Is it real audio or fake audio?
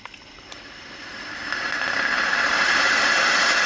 fake